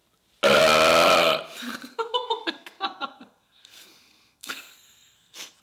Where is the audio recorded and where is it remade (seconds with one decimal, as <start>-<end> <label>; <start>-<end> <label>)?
0.0-1.9 recorded; 1.9-5.6 remade